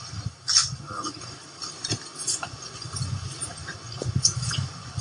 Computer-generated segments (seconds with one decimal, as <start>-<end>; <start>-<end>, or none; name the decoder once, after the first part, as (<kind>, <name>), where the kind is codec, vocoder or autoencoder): 0.6-1.2 (vocoder, Vocos); 2.1-5.0

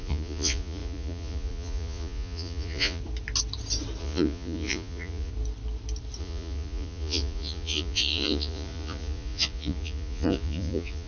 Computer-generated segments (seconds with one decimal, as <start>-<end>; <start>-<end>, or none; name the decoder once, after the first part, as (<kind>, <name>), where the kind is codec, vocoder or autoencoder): 0.0-3.0 (vocoder, Vocos); 4.0-5.3; 6.2-11.1

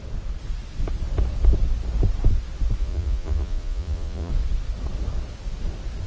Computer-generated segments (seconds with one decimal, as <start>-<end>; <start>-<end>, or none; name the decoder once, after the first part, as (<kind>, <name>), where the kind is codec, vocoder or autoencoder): 2.8-4.3 (vocoder, Vocos)